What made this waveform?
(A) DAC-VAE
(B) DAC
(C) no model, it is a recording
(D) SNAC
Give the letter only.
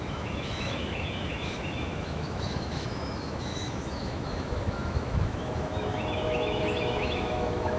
A